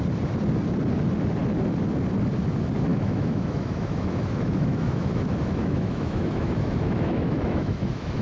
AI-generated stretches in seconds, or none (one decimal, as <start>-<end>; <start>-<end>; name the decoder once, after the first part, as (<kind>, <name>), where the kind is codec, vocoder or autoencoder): 2.9-8.2 (autoencoder, DAC-VAE)